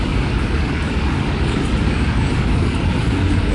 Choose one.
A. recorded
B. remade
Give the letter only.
B